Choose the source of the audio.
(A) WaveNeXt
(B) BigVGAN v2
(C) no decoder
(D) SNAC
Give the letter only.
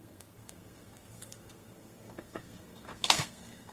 D